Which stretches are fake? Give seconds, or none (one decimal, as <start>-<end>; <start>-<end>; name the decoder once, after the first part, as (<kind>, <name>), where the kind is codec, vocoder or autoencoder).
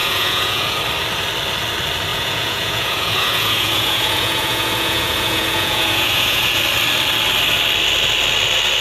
0.0-0.8 (vocoder, Vocos); 2.1-6.6